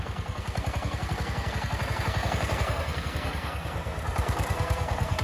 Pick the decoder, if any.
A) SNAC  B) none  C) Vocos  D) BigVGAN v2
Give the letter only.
A